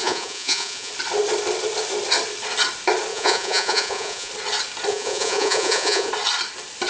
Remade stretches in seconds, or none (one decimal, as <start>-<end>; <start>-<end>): 0.0-0.9; 3.1-4.3; 4.9-6.1